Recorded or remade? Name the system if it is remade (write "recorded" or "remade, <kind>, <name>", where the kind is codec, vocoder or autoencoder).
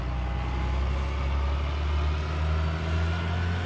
recorded